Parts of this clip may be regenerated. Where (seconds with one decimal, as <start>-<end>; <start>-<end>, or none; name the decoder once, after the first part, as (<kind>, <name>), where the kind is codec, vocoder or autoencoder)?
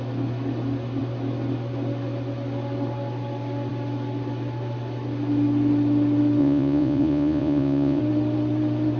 6.4-8.0 (vocoder, Vocos)